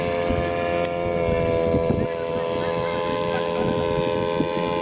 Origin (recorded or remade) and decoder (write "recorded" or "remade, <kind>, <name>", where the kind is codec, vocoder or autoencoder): recorded